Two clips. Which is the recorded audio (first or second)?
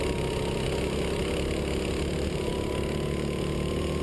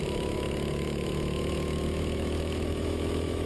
first